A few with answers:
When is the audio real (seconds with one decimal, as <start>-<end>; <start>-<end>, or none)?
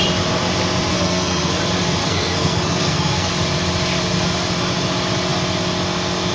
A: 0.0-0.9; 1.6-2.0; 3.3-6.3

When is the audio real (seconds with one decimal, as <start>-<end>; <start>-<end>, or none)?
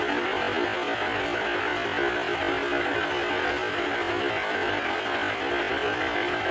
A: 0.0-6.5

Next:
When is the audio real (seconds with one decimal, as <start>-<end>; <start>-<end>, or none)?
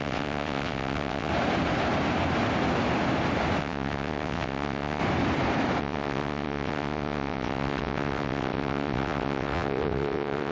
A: 1.3-3.6; 5.0-5.8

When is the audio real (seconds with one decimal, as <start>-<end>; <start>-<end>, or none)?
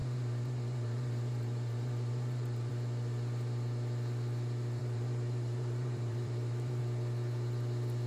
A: 2.7-4.8; 6.8-8.1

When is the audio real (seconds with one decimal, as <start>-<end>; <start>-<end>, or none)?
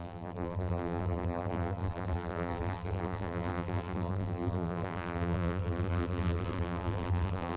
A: none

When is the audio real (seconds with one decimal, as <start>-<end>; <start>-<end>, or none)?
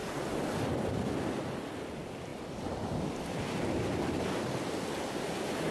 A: 0.0-5.7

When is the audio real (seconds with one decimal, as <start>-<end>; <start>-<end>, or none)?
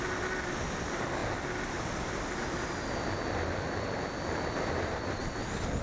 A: 0.0-5.8